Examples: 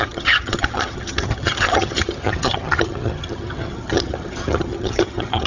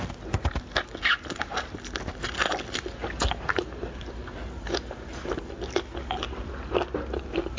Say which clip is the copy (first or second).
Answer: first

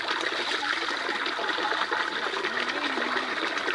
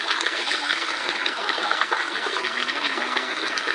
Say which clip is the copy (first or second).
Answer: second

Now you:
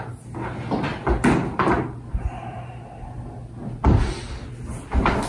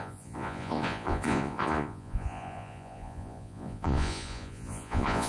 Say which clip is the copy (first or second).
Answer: second